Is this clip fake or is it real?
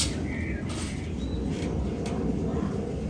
real